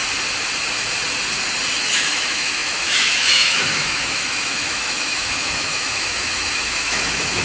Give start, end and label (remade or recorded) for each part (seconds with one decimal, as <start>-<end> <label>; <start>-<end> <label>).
0.0-1.8 recorded; 1.8-7.4 remade